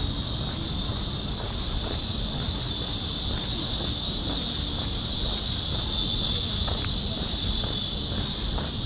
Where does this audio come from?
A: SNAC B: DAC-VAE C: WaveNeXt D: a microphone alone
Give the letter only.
D